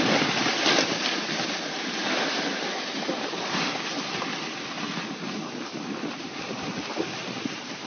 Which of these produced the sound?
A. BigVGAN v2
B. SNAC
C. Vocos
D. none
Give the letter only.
D